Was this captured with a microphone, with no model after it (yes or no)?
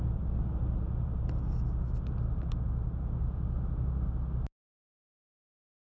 yes